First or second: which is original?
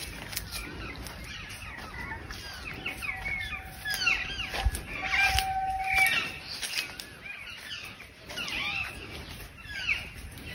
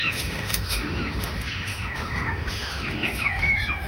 first